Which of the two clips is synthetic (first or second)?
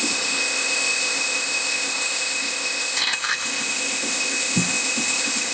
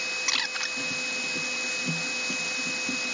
first